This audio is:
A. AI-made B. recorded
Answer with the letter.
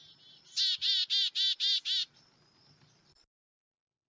B